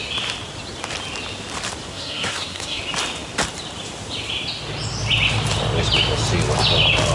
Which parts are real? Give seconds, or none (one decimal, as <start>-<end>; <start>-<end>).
0.0-1.9; 2.8-7.1